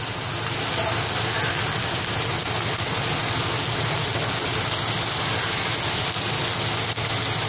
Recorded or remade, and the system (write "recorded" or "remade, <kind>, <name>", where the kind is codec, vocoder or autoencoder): recorded